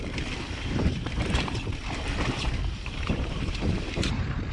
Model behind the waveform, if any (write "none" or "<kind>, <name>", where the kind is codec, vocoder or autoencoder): vocoder, BigVGAN v2